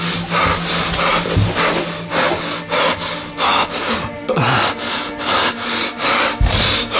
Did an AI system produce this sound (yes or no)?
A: no